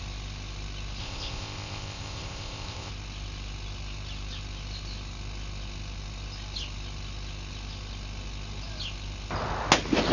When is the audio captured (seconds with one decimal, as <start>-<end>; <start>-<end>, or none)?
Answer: 0.0-1.0; 2.9-10.1